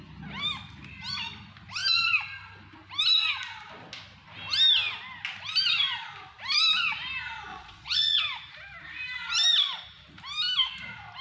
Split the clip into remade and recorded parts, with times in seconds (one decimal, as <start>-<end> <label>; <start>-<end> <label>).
0.0-7.5 recorded; 7.5-8.2 remade; 8.2-11.2 recorded